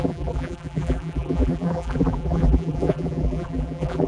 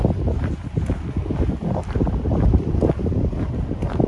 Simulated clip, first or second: first